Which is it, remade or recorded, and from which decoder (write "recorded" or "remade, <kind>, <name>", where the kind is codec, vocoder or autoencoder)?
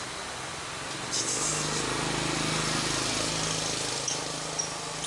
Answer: recorded